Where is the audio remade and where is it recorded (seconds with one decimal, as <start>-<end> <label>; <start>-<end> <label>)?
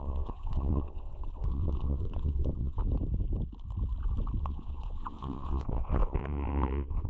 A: 0.0-2.8 remade; 2.8-4.4 recorded; 4.4-7.1 remade